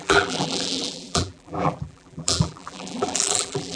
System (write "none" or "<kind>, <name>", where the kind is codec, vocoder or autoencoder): vocoder, BigVGAN v2